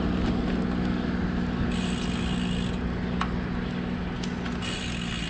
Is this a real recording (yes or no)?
yes